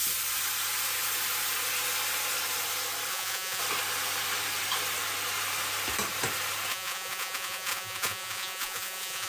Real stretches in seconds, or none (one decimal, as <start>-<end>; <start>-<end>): 0.0-3.1; 3.6-6.7